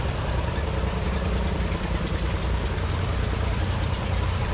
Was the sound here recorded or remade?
remade